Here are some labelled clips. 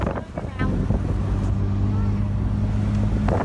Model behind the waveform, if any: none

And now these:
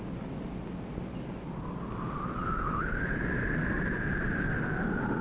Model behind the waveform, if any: none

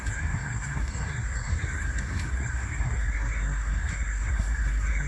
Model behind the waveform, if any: codec, SNAC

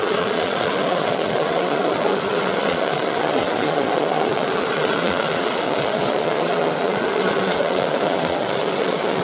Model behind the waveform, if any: vocoder, Vocos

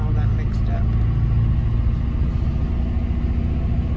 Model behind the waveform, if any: none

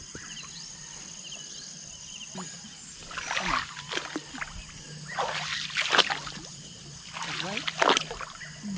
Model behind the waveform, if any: none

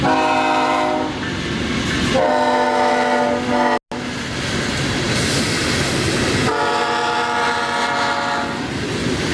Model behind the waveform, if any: none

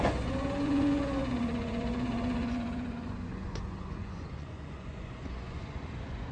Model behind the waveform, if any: vocoder, Vocos